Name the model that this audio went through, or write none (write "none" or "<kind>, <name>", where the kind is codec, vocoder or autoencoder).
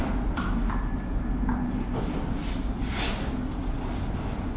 none